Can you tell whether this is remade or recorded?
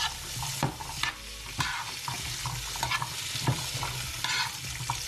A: recorded